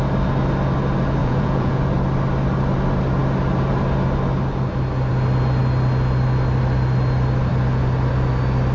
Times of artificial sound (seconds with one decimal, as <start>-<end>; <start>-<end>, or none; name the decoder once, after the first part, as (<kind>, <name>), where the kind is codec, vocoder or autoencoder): 1.2-1.8 (vocoder, Vocos)